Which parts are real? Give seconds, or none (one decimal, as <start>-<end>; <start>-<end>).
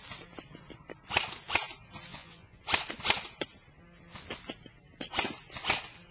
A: 0.0-2.1; 2.6-6.1